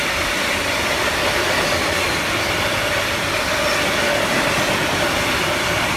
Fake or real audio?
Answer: real